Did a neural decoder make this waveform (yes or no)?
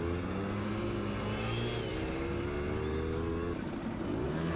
no